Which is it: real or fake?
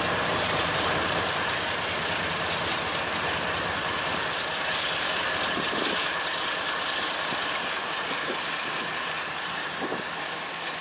fake